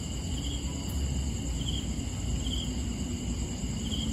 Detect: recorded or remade recorded